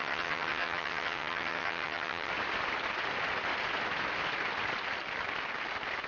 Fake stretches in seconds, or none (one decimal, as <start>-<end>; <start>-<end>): 0.0-2.3